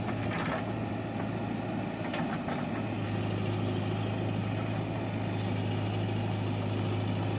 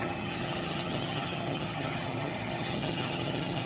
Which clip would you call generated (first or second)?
second